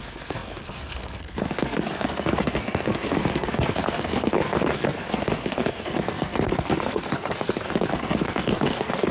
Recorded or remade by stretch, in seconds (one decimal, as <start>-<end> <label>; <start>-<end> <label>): 0.0-9.1 remade